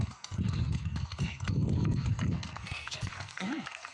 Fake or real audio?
fake